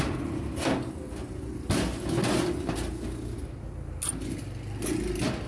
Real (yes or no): yes